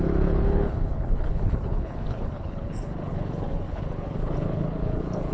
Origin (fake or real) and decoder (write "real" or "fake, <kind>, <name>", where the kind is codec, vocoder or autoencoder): fake, codec, HILCodec